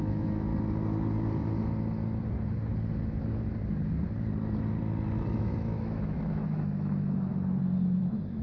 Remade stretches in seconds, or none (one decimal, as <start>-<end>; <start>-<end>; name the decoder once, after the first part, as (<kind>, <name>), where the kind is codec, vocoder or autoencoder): 0.0-0.5 (autoencoder, DAC-VAE); 5.4-7.3; 8.0-8.4